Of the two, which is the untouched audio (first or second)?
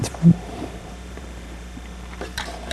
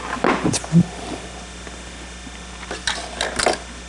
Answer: second